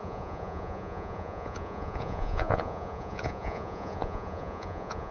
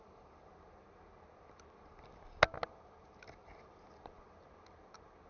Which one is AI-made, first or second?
first